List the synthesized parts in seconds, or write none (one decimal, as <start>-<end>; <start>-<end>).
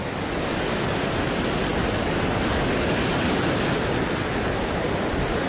none